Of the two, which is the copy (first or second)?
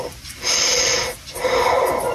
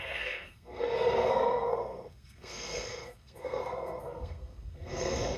second